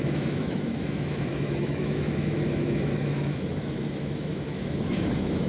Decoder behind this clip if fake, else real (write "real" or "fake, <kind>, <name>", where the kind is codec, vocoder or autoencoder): fake, autoencoder, DAC-VAE